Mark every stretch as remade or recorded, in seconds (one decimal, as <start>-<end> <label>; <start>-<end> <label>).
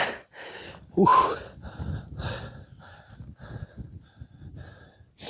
0.0-5.3 recorded